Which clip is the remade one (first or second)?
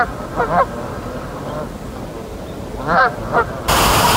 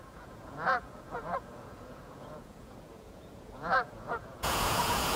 second